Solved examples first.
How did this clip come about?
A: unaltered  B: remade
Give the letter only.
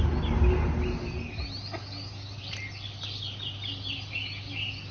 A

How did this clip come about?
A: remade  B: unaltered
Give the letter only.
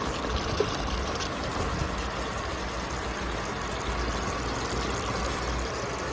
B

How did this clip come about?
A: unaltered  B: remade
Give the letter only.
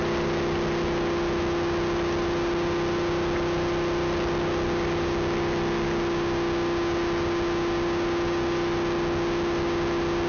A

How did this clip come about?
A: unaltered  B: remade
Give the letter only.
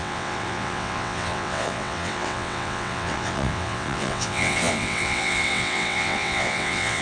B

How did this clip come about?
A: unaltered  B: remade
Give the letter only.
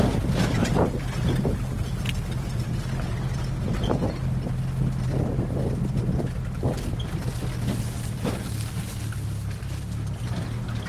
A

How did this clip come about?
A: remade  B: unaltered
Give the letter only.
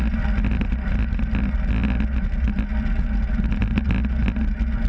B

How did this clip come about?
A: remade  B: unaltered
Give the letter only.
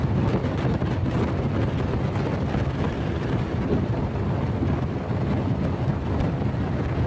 B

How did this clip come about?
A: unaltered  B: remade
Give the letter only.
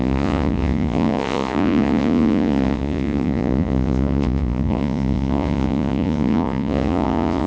B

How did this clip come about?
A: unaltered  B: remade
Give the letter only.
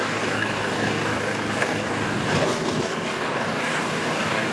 B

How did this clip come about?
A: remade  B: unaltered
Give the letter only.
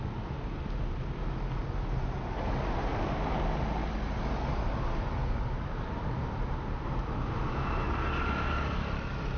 B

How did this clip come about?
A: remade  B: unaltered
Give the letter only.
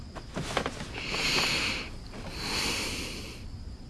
B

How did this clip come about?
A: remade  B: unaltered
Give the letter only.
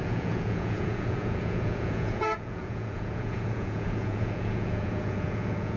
A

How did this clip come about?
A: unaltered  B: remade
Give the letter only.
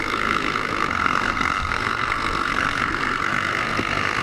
B